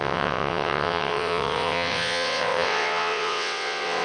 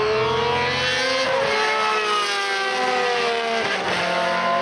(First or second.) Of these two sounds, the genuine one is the second